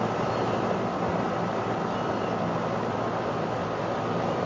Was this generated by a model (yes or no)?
no